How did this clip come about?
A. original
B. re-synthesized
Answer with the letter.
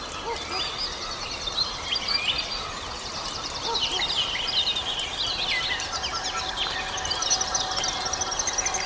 A